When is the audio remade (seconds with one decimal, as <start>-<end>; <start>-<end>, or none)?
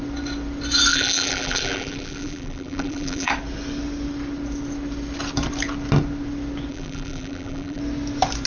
0.9-3.3; 6.7-7.8